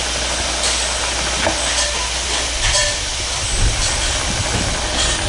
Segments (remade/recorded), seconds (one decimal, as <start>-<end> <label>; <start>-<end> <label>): 0.0-5.3 recorded